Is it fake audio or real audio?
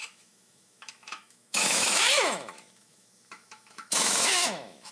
fake